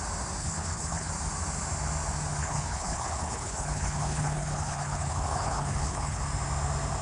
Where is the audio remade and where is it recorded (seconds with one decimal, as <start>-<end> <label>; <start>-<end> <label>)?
0.0-0.4 recorded; 0.4-1.1 remade; 1.1-2.4 recorded; 2.4-6.2 remade; 6.2-7.0 recorded